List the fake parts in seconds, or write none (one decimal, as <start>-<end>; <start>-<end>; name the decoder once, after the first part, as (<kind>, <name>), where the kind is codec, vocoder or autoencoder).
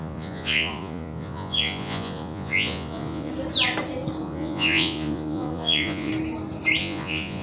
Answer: 0.0-3.3 (vocoder, Vocos); 4.2-6.1; 6.8-7.4